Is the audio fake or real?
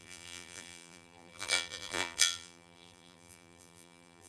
fake